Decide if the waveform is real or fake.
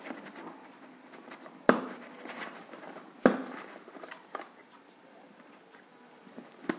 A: fake